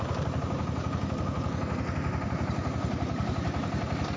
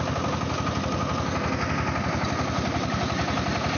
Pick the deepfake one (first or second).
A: first